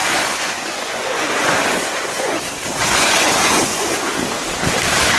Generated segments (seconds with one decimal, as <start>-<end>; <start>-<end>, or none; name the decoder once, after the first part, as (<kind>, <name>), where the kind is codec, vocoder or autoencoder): 0.0-2.4 (vocoder, Vocos); 2.8-4.1